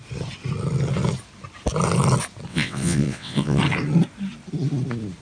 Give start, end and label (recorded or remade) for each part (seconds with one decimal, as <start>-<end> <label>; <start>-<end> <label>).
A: 0.0-2.5 recorded; 2.5-3.6 remade; 3.6-5.2 recorded

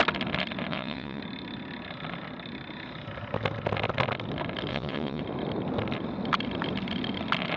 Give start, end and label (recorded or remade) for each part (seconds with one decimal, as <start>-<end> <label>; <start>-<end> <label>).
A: 0.0-0.7 recorded; 0.7-1.2 remade; 1.2-4.7 recorded; 4.7-5.2 remade; 5.2-7.6 recorded

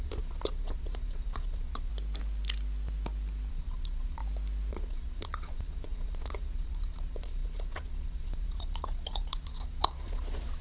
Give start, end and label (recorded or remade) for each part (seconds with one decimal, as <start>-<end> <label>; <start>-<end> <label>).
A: 0.0-1.9 remade; 1.9-3.5 recorded; 3.5-4.2 remade; 4.2-4.7 recorded; 4.7-10.6 remade

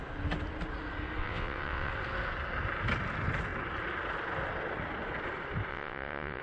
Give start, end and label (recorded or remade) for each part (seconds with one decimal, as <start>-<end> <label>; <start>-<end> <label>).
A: 0.0-1.2 recorded; 1.2-1.9 remade; 1.9-5.7 recorded; 5.7-6.4 remade